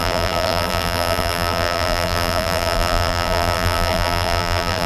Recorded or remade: remade